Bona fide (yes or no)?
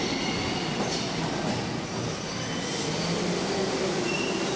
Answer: yes